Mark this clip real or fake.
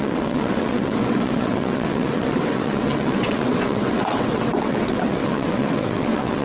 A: fake